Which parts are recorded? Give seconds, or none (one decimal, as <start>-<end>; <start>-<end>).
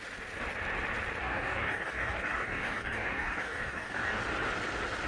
0.0-1.2; 4.2-5.1